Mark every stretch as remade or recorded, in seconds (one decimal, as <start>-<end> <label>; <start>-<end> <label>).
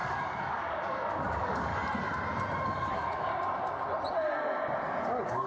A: 0.0-1.7 remade; 1.7-2.6 recorded; 2.6-3.3 remade; 3.3-5.0 recorded; 5.0-5.5 remade